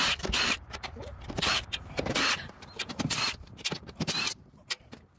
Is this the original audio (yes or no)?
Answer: no